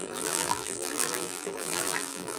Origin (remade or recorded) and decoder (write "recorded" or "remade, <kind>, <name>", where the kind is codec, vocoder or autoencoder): remade, vocoder, BigVGAN v2